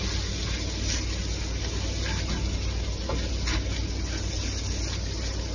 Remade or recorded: recorded